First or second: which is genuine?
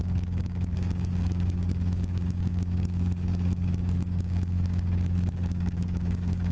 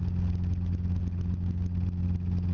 second